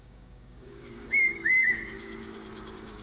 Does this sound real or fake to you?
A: fake